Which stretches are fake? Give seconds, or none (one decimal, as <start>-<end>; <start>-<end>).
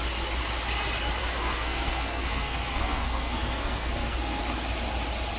1.2-4.4